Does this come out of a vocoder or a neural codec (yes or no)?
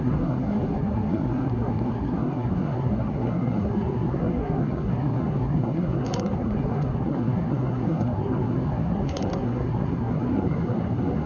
yes